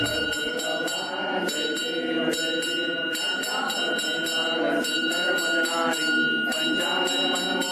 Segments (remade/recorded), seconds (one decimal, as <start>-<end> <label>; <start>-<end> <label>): 0.0-7.7 recorded